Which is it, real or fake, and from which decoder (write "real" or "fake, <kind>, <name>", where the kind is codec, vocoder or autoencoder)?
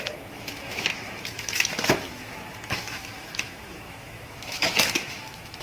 fake, autoencoder, DAC-VAE